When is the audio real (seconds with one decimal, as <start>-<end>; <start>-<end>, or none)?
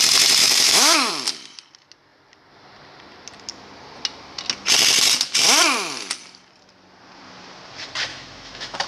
0.0-0.4; 1.1-8.1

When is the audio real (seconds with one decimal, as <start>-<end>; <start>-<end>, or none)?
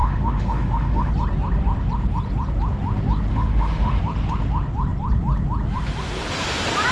1.1-3.3; 4.0-6.9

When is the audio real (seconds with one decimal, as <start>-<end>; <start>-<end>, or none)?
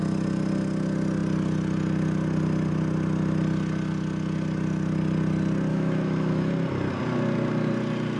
0.0-5.7; 6.5-8.2